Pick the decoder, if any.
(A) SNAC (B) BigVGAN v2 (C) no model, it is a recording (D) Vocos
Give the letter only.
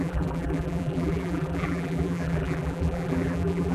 B